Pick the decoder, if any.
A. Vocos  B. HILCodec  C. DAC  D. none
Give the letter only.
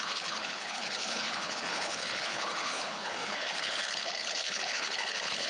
B